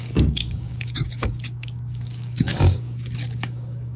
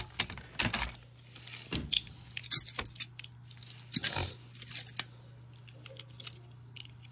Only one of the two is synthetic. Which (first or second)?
first